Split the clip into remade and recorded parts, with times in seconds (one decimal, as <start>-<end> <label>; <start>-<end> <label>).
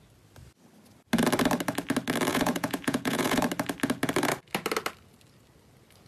0.0-2.3 recorded; 2.3-3.4 remade; 3.4-6.1 recorded